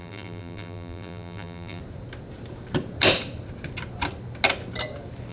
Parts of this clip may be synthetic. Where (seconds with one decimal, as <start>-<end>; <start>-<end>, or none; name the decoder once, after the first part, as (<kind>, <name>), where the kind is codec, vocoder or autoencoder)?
0.0-1.8 (vocoder, BigVGAN v2)